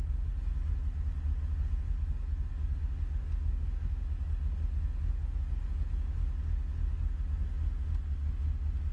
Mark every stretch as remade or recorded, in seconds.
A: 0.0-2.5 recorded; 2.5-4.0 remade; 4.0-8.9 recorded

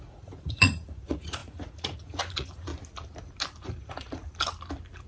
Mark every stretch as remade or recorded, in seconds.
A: 0.0-2.7 remade; 2.7-3.6 recorded; 3.6-4.2 remade; 4.2-5.1 recorded

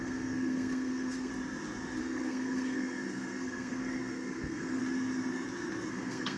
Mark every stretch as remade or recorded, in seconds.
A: 0.0-1.3 remade; 1.3-2.0 recorded; 2.0-4.8 remade; 4.8-5.9 recorded; 5.9-6.4 remade